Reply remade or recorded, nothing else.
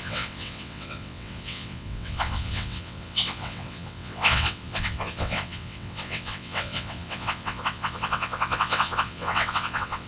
remade